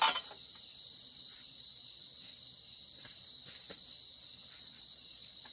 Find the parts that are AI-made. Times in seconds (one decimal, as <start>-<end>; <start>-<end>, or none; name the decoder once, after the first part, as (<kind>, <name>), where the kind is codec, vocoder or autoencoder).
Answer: 1.5-2.1 (vocoder, Vocos); 4.6-5.5